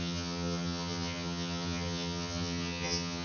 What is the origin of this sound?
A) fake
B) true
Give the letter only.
A